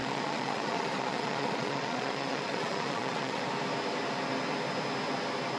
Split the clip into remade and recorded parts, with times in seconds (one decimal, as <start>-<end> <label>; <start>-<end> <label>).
0.0-3.4 remade; 3.4-5.6 recorded